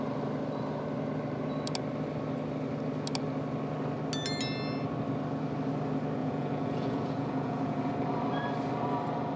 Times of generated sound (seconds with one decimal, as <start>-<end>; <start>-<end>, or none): 6.2-7.9